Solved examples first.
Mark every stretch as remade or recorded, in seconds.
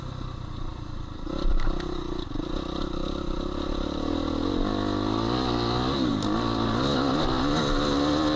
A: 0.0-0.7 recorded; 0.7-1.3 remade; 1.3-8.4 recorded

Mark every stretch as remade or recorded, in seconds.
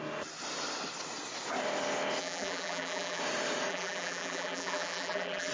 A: 0.0-2.2 recorded; 2.2-3.2 remade; 3.2-3.7 recorded; 3.7-5.5 remade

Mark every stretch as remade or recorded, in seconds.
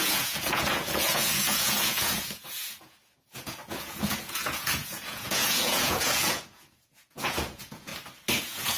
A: 0.0-7.9 remade; 7.9-8.4 recorded; 8.4-8.8 remade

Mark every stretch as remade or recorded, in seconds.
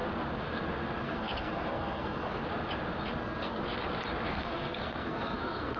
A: 0.0-1.0 recorded; 1.0-2.4 remade; 2.4-3.2 recorded; 3.2-3.6 remade; 3.6-4.3 recorded; 4.3-5.8 remade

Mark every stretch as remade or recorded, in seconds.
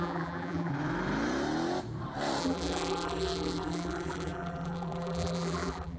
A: 0.0-0.7 remade; 0.7-2.4 recorded; 2.4-6.0 remade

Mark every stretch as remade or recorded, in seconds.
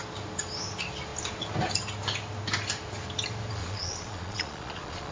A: 0.0-3.6 recorded; 3.6-5.1 remade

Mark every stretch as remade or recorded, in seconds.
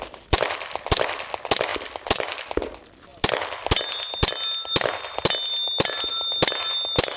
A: 0.0-7.2 recorded